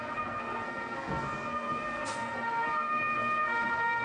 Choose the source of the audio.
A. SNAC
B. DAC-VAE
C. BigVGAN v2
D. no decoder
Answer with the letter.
A